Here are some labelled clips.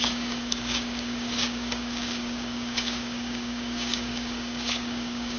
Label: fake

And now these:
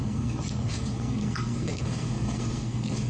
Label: fake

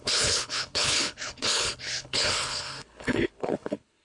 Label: fake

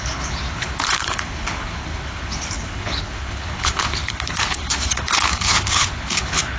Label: fake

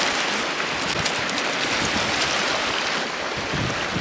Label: real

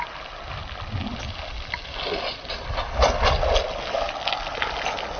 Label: real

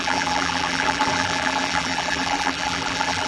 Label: fake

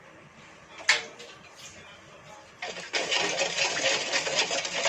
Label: real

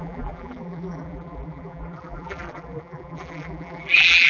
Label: fake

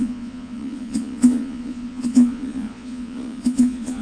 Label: fake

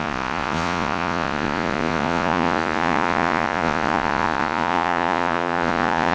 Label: fake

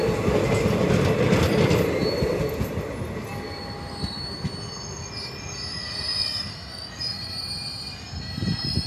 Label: real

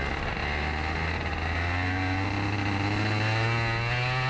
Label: real